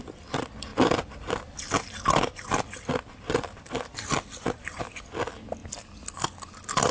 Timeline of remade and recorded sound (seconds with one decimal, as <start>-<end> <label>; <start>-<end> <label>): 0.0-6.9 recorded